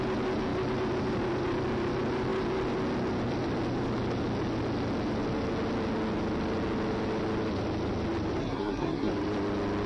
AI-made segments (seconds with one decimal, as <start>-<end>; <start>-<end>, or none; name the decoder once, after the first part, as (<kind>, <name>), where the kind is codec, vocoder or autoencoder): 8.4-9.1 (codec, SNAC)